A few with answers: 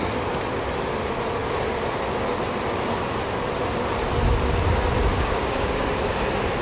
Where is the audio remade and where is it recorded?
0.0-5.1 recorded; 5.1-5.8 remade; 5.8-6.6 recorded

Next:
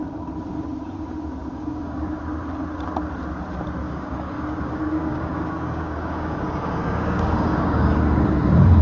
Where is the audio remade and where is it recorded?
0.0-1.4 recorded; 1.4-2.2 remade; 2.2-3.8 recorded; 3.8-8.0 remade; 8.0-8.8 recorded

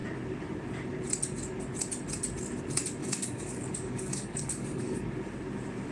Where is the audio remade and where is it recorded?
0.0-3.0 recorded; 3.0-5.0 remade; 5.0-5.9 recorded

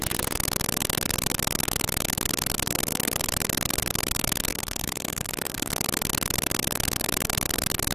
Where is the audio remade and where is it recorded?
0.0-4.5 recorded; 4.5-5.7 remade; 5.7-7.9 recorded

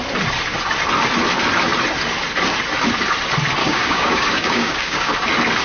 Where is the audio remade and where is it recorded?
0.0-3.6 recorded; 3.6-5.1 remade; 5.1-5.6 recorded

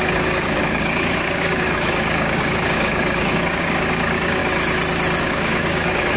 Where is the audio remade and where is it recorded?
0.0-4.4 remade; 4.4-5.2 recorded; 5.2-6.2 remade

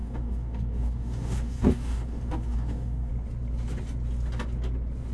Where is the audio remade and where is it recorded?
0.0-3.1 remade; 3.1-5.1 recorded

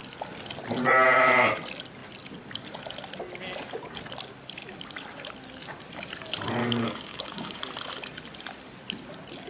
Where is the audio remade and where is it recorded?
0.0-6.6 recorded; 6.6-7.6 remade; 7.6-9.5 recorded